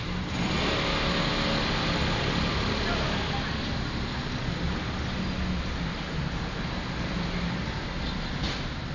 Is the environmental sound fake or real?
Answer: real